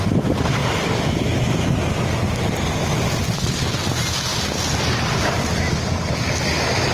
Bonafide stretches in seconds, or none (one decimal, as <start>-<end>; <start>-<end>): 0.0-6.9